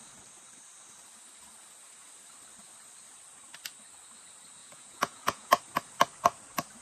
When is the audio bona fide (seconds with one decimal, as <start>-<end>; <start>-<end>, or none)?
0.0-4.6; 5.6-6.8